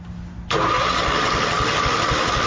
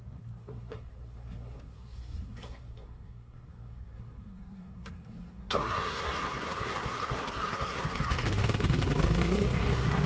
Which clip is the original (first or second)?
first